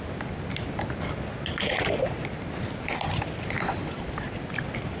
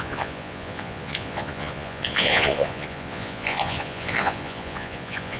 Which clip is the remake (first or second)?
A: second